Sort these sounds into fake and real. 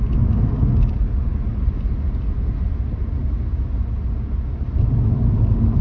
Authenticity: real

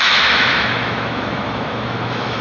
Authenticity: fake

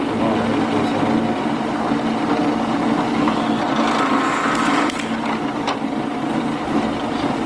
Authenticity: real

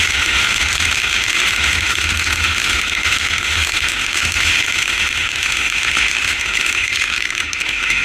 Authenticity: fake